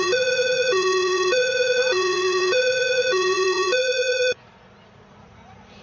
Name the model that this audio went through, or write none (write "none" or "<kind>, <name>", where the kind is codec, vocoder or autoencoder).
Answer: vocoder, Vocos